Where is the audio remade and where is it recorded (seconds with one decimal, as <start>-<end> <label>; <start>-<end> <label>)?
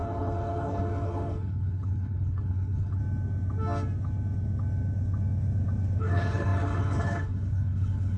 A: 0.0-3.0 remade; 3.0-6.0 recorded; 6.0-8.2 remade